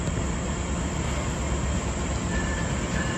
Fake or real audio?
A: real